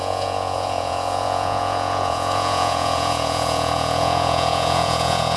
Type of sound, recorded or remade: remade